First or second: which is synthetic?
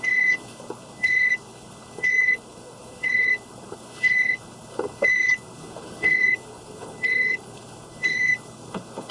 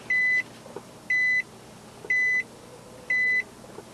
first